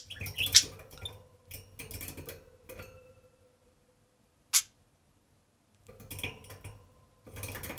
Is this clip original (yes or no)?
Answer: yes